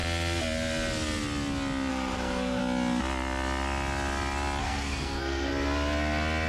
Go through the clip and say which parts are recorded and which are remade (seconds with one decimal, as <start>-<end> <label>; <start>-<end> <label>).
0.0-1.9 recorded; 1.9-2.6 remade; 2.6-4.6 recorded; 4.6-5.5 remade; 5.5-6.5 recorded